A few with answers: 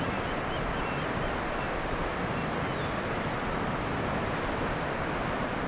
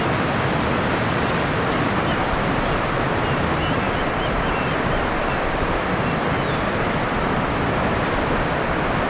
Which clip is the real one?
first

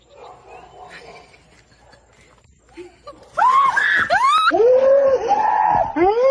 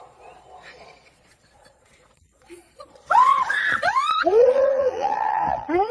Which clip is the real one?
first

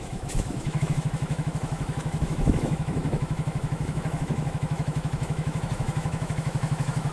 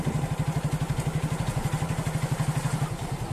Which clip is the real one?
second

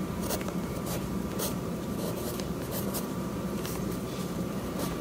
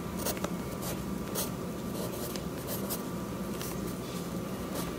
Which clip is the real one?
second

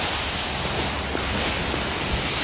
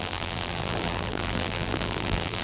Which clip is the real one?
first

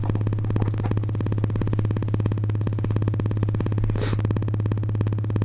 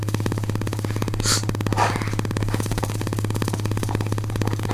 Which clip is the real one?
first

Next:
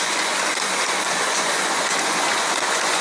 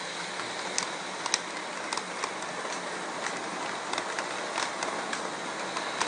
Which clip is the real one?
second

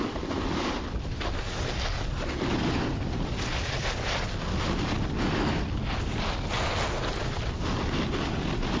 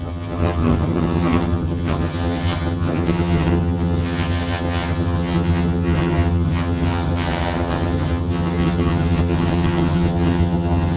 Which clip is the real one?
first